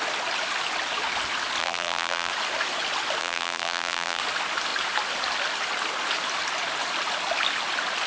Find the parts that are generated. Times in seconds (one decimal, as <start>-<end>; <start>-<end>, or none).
1.6-2.3; 3.2-4.2